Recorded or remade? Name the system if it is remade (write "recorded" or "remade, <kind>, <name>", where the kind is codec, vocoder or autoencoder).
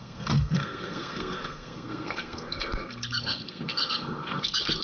remade, codec, SNAC